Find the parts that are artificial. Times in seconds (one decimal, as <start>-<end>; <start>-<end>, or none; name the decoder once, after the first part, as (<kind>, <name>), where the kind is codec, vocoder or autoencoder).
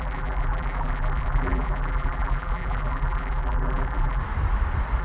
0.0-4.2 (vocoder, BigVGAN v2)